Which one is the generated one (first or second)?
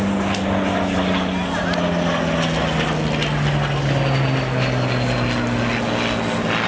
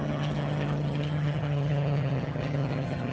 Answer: second